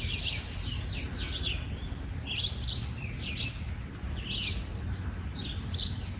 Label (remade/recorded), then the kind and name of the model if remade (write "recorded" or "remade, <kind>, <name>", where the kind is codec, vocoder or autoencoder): recorded